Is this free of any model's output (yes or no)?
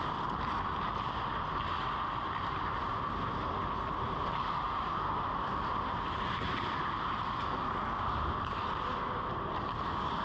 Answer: yes